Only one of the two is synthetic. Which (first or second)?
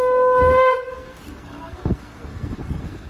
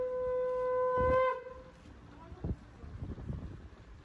first